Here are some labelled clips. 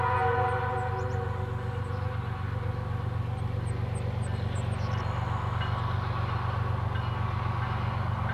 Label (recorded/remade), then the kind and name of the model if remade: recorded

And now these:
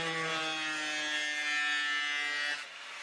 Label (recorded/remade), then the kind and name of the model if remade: recorded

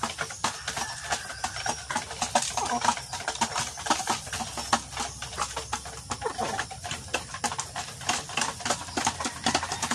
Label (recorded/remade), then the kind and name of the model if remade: remade, vocoder, BigVGAN v2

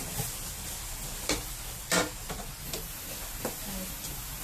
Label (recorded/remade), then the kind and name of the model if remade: recorded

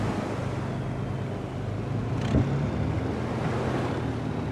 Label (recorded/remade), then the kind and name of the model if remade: recorded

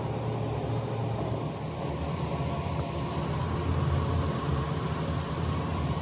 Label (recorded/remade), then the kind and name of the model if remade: recorded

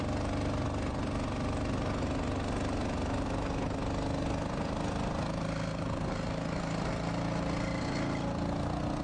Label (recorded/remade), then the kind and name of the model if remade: recorded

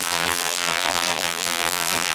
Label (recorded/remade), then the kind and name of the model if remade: remade, vocoder, BigVGAN v2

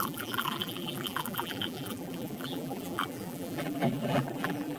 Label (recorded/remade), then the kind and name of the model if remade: remade, vocoder, BigVGAN v2